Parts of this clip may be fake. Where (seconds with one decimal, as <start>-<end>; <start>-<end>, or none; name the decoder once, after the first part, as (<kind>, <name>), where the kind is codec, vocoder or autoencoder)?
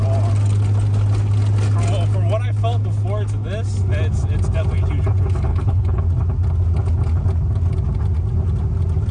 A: 5.5-6.0 (codec, HILCodec)